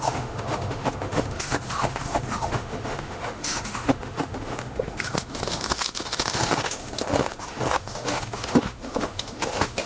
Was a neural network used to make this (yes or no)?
yes